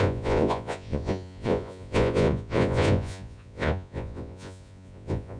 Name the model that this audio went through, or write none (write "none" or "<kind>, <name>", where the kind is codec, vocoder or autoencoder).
vocoder, Vocos